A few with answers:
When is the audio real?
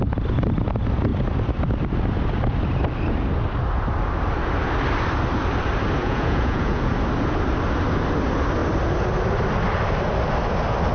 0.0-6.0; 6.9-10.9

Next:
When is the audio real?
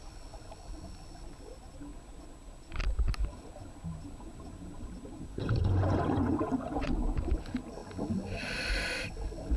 0.0-5.3; 7.0-9.6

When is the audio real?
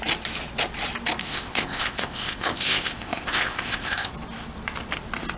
0.0-1.2; 4.1-5.4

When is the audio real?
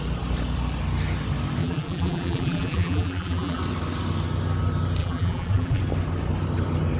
0.0-1.6; 3.6-5.0; 5.8-7.0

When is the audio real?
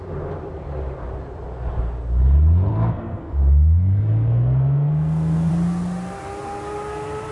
0.0-2.7; 5.5-7.3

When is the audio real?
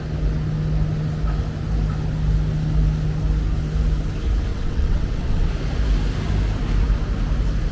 0.0-4.5; 5.5-7.7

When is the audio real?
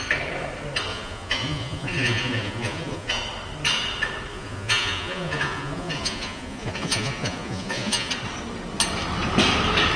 0.0-0.9; 3.2-4.3; 8.1-10.0